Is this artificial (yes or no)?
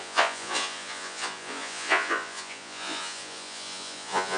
yes